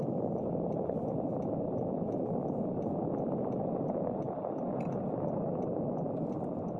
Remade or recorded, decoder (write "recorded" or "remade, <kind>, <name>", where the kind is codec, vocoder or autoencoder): recorded